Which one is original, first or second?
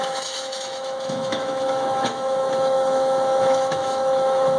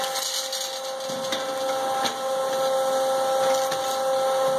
second